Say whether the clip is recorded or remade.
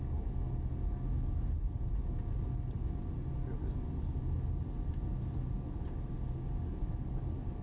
recorded